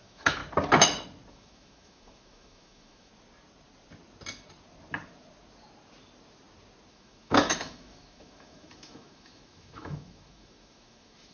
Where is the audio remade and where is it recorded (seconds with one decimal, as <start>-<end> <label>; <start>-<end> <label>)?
0.0-0.4 remade; 0.4-1.3 recorded; 1.3-3.1 remade; 3.1-6.9 recorded; 6.9-11.3 remade